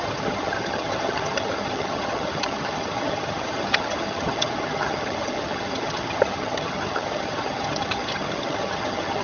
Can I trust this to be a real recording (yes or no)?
no